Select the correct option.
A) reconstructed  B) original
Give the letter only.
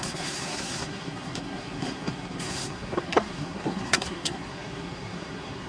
A